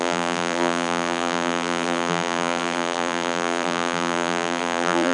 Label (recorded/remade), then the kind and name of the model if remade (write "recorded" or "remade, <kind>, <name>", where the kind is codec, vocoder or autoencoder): remade, vocoder, BigVGAN v2